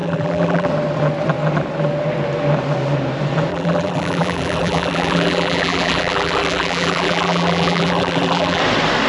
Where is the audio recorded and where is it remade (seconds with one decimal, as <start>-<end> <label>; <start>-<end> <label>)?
0.0-0.7 remade; 0.7-3.5 recorded; 3.5-8.6 remade; 8.6-9.1 recorded